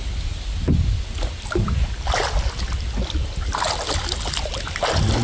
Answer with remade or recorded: recorded